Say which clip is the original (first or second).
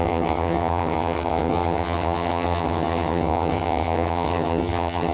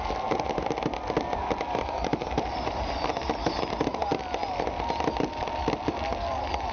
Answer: second